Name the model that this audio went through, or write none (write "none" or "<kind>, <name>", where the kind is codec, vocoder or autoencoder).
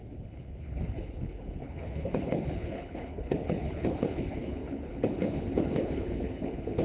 codec, HILCodec